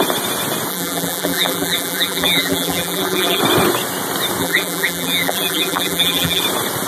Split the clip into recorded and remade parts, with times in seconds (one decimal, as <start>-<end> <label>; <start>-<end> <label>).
0.0-0.7 recorded; 0.7-3.4 remade; 3.4-4.4 recorded; 4.4-6.4 remade; 6.4-6.9 recorded